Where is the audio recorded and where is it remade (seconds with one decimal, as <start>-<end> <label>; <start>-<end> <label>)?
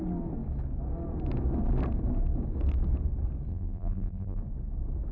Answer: 0.0-3.5 recorded; 3.5-4.4 remade; 4.4-5.1 recorded